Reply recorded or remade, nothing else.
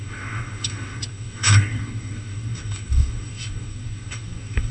remade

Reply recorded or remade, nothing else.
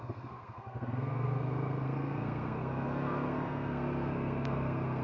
remade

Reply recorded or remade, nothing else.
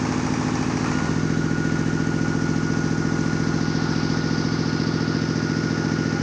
recorded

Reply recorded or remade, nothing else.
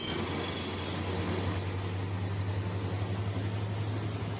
recorded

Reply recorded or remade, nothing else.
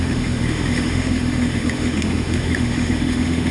remade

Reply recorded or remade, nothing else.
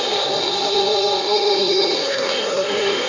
remade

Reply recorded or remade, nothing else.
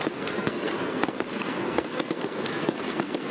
remade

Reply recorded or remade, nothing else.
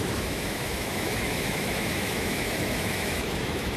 remade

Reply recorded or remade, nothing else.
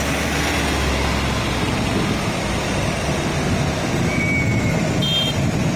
recorded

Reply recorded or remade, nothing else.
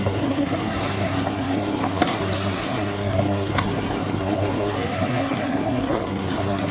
remade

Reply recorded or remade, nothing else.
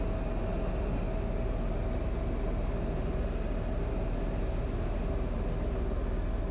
recorded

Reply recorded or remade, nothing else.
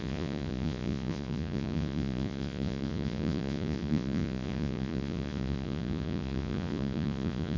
remade